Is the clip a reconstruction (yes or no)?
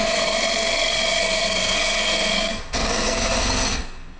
yes